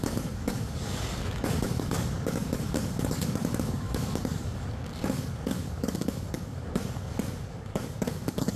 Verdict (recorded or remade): remade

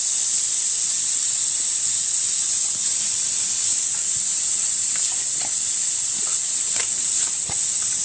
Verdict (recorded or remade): recorded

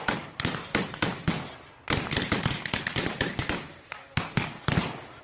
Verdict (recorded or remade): recorded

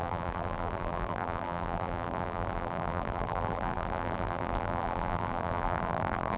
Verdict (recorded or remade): remade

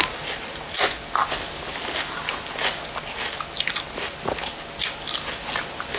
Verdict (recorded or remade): recorded